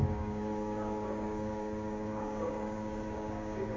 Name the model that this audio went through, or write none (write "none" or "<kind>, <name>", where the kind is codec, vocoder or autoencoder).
codec, DAC